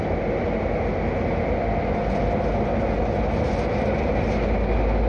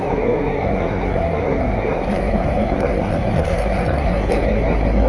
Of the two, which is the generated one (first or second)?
second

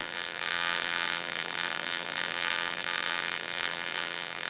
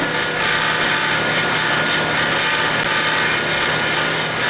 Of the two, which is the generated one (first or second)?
first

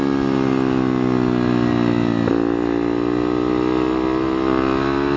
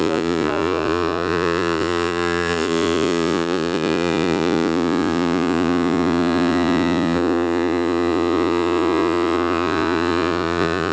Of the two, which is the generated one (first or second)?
second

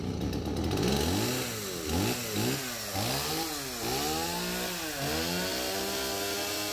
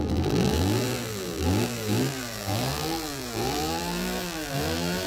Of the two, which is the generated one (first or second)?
second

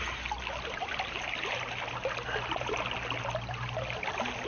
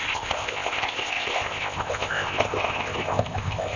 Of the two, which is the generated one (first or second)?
second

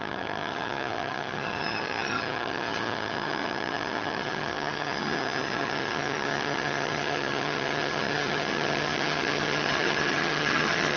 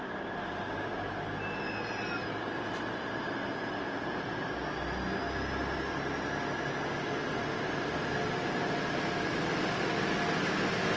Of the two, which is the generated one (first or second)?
first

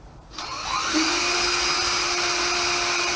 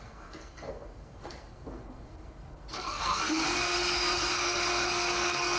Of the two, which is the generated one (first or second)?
second